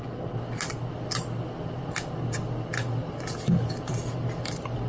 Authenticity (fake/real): real